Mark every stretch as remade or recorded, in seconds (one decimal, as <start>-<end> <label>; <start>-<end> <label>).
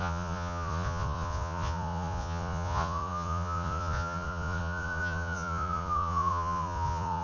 0.0-7.2 remade